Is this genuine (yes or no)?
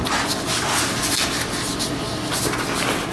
yes